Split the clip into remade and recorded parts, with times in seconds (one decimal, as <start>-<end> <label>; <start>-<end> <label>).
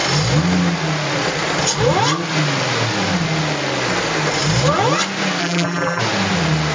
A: 0.0-5.4 recorded; 5.4-6.0 remade; 6.0-6.7 recorded